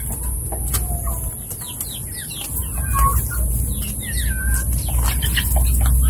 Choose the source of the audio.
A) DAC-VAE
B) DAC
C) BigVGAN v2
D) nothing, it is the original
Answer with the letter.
D